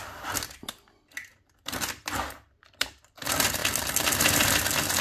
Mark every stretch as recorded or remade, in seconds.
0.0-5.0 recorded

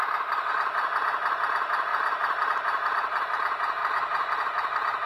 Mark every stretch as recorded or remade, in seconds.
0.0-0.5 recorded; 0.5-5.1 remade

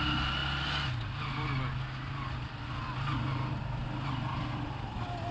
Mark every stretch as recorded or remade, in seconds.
0.0-4.3 recorded; 4.3-5.3 remade

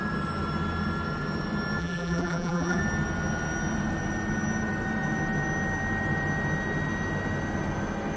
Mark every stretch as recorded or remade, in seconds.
0.0-1.8 recorded; 1.8-2.8 remade; 2.8-8.2 recorded

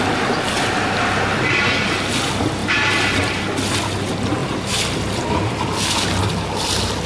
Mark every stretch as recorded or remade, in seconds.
0.0-2.6 recorded; 2.6-3.5 remade; 3.5-7.1 recorded